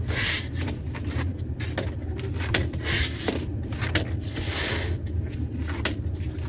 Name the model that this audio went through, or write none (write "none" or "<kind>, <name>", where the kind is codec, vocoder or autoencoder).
none